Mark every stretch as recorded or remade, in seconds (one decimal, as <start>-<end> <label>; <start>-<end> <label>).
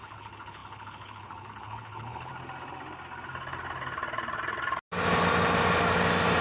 0.0-2.3 remade; 2.3-6.4 recorded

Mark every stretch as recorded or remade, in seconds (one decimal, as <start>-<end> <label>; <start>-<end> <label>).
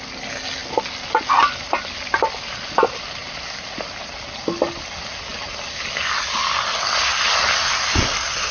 0.0-8.5 recorded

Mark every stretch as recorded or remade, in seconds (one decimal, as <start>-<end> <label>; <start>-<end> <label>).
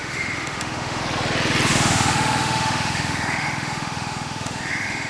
0.0-1.0 remade; 1.0-1.7 recorded; 1.7-5.1 remade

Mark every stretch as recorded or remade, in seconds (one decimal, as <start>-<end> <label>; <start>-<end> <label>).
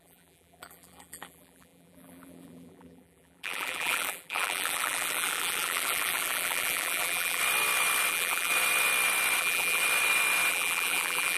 0.0-7.4 remade; 7.4-8.1 recorded; 8.1-8.5 remade; 8.5-9.4 recorded; 9.4-9.8 remade; 9.8-10.5 recorded; 10.5-11.4 remade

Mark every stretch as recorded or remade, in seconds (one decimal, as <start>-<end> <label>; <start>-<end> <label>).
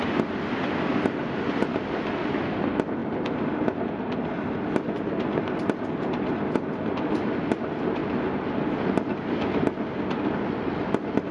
0.0-11.3 recorded